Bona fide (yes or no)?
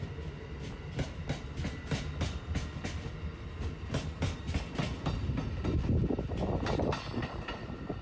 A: yes